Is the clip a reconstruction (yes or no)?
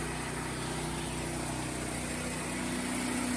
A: no